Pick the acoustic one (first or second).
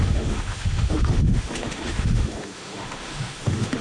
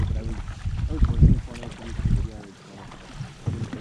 second